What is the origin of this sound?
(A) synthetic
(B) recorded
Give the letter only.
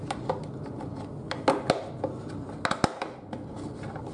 B